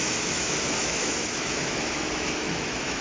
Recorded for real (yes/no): no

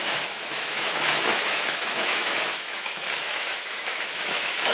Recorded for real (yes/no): no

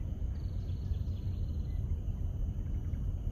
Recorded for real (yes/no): yes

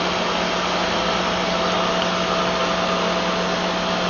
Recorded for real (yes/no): yes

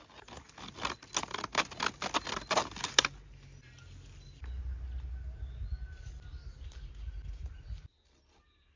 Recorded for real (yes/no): yes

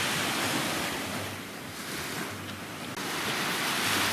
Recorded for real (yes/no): yes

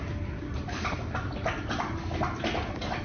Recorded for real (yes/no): yes